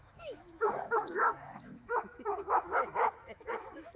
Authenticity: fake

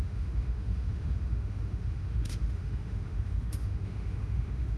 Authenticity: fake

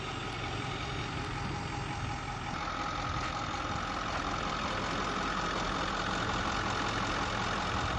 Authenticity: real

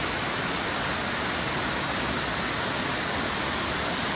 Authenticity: real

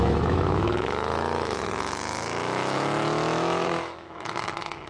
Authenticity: fake